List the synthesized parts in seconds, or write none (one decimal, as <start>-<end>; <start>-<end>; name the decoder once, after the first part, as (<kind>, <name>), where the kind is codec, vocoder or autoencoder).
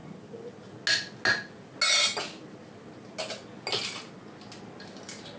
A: none